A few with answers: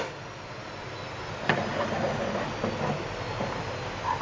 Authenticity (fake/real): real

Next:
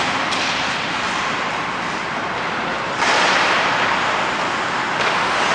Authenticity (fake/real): real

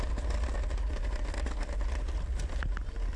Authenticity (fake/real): real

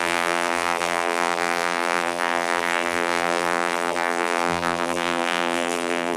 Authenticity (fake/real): fake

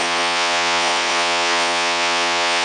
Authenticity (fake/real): fake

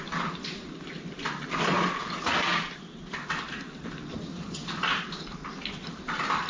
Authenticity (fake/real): real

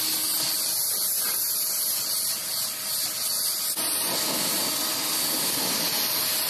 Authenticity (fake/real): real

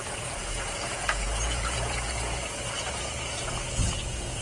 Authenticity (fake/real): fake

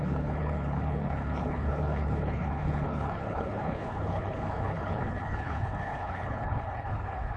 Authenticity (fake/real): fake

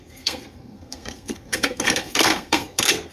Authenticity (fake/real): fake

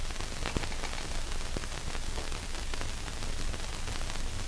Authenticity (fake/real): real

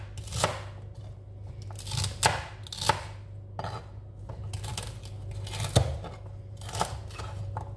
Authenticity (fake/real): real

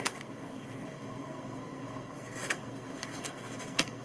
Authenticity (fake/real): fake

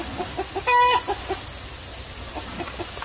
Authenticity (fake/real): real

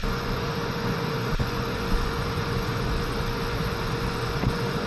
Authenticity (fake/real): fake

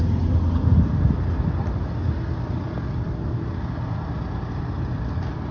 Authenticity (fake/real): real